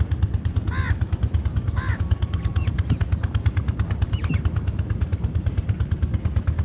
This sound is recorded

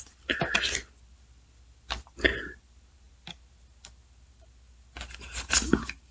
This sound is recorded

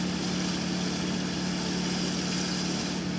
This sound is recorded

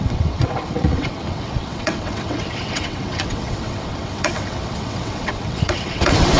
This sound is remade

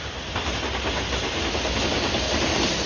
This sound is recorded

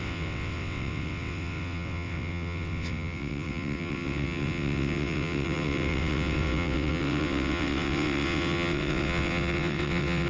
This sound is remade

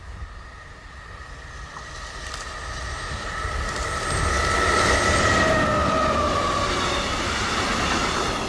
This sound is recorded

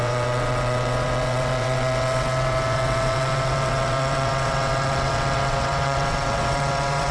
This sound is remade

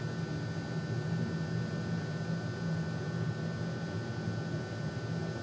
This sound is recorded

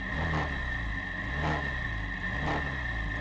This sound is recorded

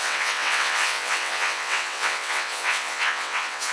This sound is remade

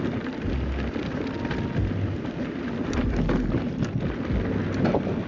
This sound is recorded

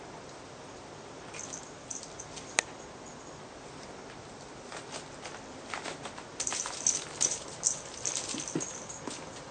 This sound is recorded